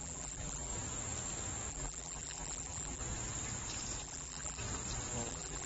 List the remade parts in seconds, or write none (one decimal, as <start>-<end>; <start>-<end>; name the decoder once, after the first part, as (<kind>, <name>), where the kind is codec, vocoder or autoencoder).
0.0-0.7 (vocoder, BigVGAN v2); 1.7-3.0; 4.0-4.6; 5.3-5.7